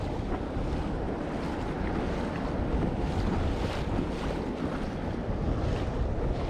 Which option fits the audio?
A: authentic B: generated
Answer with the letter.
A